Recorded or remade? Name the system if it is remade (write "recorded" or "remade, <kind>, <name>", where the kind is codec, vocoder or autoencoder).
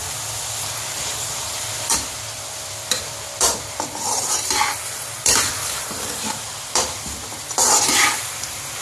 remade, vocoder, BigVGAN v2